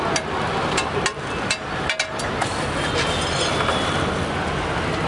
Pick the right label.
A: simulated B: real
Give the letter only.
B